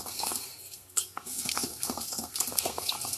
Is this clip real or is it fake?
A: fake